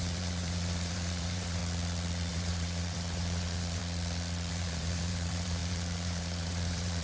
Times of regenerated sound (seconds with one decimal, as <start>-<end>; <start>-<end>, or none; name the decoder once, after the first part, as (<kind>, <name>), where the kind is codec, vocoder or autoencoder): 0.0-1.6 (vocoder, BigVGAN v2); 2.3-3.8; 4.5-7.0